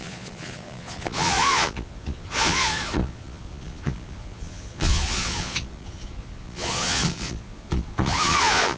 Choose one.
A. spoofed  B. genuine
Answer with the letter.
A